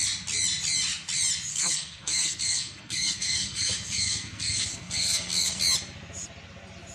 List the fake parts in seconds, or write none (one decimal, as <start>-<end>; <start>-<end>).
1.5-5.6